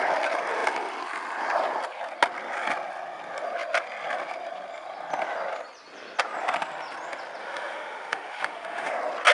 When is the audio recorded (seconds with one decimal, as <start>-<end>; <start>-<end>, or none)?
0.0-7.4; 8.9-9.3